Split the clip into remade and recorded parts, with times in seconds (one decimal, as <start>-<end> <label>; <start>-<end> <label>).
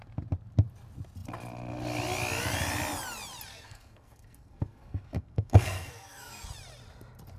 0.0-3.5 recorded; 3.5-6.5 remade; 6.5-7.4 recorded